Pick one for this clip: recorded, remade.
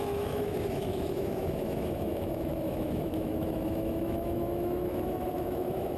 remade